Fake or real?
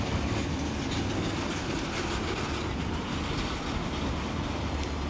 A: real